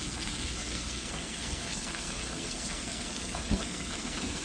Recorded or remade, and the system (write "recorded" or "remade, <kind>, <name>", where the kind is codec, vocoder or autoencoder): remade, codec, SNAC